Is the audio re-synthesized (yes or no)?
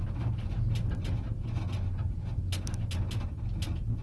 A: no